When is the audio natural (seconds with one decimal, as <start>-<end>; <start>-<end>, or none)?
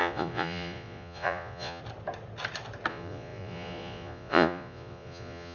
1.8-2.9